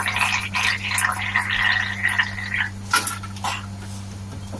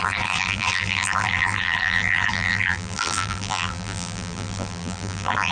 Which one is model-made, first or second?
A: second